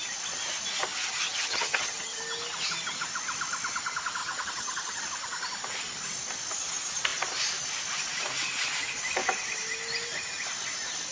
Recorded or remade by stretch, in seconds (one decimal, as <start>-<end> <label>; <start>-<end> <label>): 0.0-0.9 recorded; 0.9-2.2 remade; 2.2-4.2 recorded; 4.2-5.0 remade; 5.0-11.1 recorded